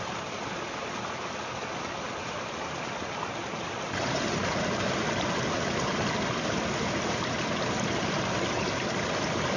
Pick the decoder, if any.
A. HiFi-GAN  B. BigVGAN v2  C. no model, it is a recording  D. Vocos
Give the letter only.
C